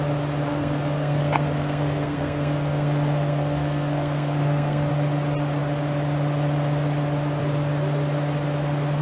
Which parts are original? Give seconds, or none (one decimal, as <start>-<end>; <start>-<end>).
0.0-0.5; 4.9-9.0